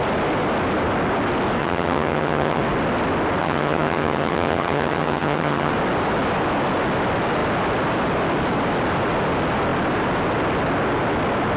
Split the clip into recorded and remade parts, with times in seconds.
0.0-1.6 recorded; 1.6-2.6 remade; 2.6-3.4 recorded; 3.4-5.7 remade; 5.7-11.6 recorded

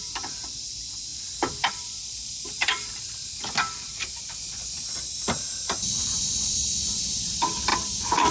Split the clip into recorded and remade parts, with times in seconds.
0.0-8.3 remade

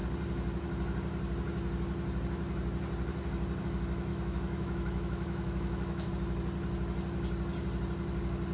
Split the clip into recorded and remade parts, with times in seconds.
0.0-4.1 recorded; 4.1-6.1 remade; 6.1-8.5 recorded

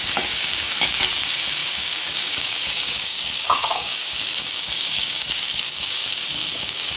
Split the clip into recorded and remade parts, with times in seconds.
0.0-7.0 remade

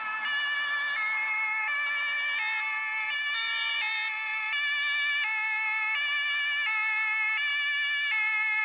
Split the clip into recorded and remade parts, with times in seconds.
0.0-8.6 recorded

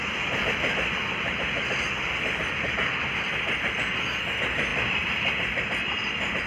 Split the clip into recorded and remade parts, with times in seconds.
0.0-4.7 recorded; 4.7-6.5 remade